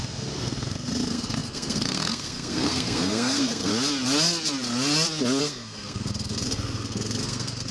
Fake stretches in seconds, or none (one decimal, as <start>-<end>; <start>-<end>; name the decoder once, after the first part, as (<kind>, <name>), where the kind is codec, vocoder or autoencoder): 0.0-3.7 (codec, SNAC); 5.4-7.7